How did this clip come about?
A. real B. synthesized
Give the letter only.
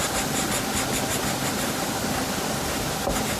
A